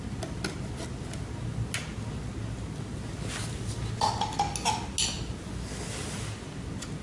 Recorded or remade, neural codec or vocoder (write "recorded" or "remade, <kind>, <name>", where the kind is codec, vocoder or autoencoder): recorded